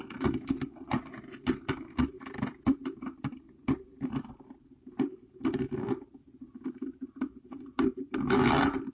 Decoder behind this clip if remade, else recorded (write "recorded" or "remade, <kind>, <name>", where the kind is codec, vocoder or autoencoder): recorded